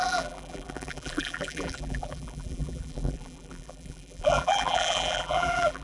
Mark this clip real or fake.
fake